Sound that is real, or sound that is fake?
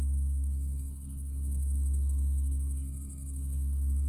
fake